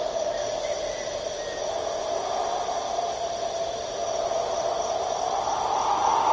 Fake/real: real